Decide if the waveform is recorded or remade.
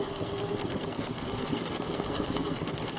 remade